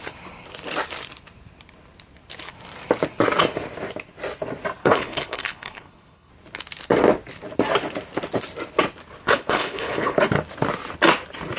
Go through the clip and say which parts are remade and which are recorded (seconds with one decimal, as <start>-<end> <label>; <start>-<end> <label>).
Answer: 0.0-4.8 recorded; 4.8-6.3 remade; 6.3-9.2 recorded; 9.2-10.2 remade; 10.2-11.6 recorded